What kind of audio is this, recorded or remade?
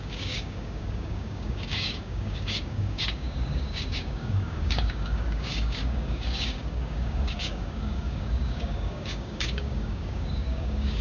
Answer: remade